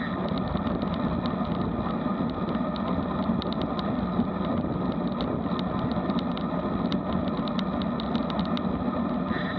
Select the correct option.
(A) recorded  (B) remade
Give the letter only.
A